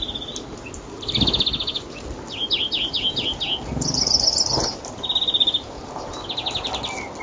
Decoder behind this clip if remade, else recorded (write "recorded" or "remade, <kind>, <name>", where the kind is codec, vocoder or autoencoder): recorded